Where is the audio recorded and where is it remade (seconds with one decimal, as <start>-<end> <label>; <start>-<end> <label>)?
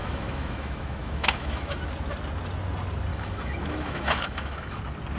0.0-1.8 remade; 1.8-3.1 recorded; 3.1-4.8 remade; 4.8-5.2 recorded